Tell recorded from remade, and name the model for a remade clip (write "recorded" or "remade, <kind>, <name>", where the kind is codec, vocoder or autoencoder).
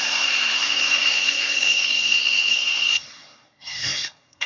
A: remade, codec, SNAC